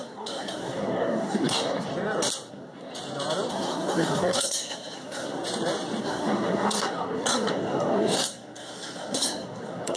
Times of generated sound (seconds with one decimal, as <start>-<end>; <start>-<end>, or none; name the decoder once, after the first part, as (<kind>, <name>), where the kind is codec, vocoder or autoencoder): 0.0-1.9 (codec, SNAC); 2.5-2.9; 3.5-5.4; 6.0-10.0